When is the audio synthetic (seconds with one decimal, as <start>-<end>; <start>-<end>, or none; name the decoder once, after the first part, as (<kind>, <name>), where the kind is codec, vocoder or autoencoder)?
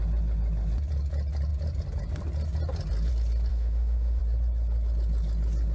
3.5-4.2 (autoencoder, DAC-VAE)